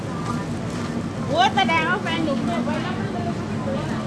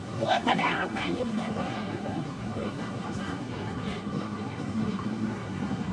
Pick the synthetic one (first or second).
second